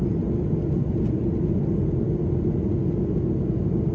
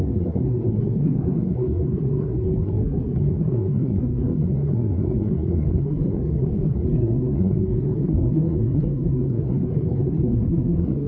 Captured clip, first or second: first